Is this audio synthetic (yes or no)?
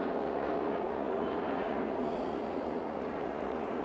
yes